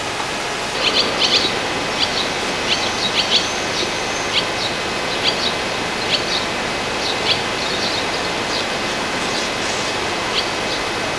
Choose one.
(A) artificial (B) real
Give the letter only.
B